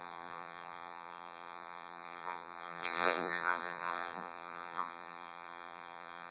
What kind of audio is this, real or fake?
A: fake